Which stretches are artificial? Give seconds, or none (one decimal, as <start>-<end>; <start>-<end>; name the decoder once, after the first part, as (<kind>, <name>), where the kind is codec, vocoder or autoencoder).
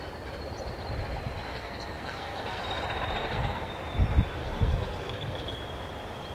1.5-2.6 (codec, SNAC); 3.2-3.7; 4.4-5.6